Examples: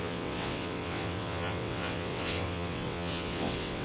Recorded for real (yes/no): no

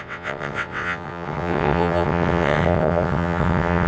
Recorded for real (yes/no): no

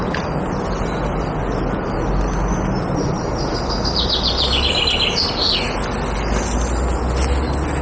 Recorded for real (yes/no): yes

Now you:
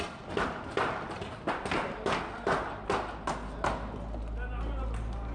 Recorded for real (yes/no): yes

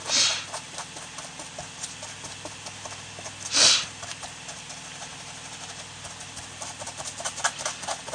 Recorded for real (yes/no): yes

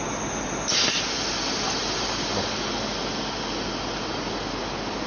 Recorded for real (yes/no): yes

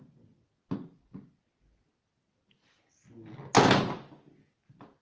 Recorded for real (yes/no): yes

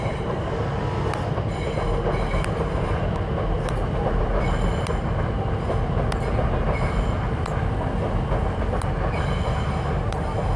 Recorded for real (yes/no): yes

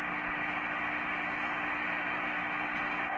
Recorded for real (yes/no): yes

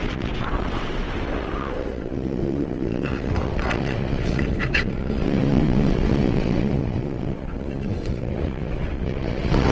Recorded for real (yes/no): no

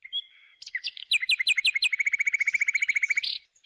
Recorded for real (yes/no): yes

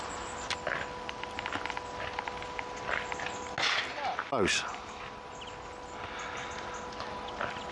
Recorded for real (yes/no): yes